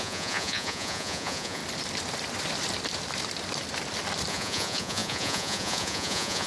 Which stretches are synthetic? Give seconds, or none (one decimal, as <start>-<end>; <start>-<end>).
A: 0.0-1.6; 4.3-6.5